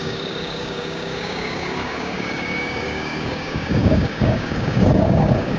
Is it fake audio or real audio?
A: fake